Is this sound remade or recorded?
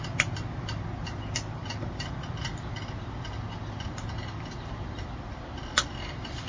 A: recorded